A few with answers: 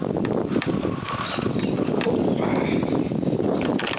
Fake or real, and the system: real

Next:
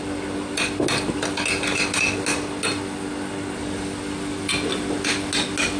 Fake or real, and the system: real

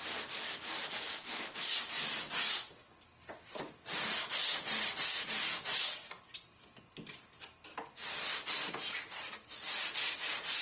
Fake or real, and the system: real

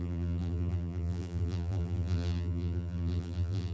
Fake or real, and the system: fake, vocoder, BigVGAN v2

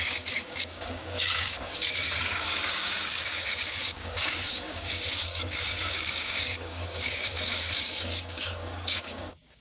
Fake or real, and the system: fake, codec, DAC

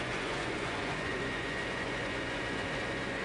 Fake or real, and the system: fake, vocoder, Vocos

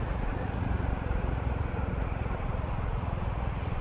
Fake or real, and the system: fake, vocoder, Vocos